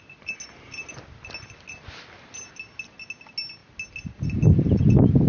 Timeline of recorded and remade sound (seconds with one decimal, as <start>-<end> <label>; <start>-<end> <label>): 0.0-5.3 recorded